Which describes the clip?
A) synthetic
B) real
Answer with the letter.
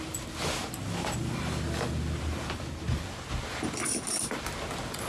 B